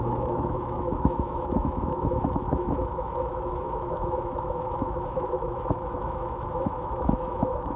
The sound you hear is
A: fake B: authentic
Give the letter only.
A